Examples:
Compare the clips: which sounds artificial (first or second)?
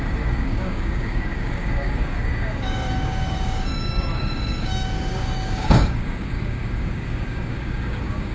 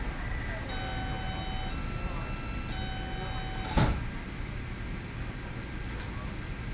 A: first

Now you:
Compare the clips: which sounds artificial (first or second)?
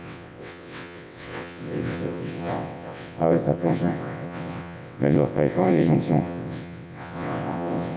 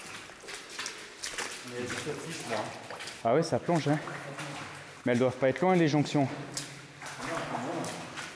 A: first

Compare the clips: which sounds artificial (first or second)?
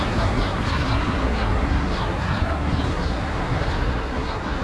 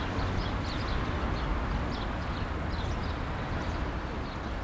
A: first